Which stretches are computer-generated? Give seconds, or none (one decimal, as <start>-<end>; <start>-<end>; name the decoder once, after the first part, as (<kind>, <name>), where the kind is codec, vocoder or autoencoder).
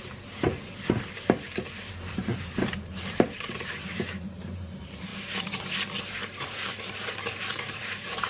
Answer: 0.0-0.5 (vocoder, BigVGAN v2); 1.9-5.1; 6.0-8.3